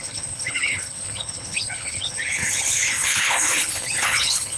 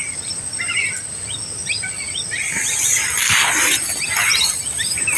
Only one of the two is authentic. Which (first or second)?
second